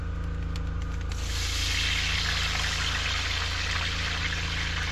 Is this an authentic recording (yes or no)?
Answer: yes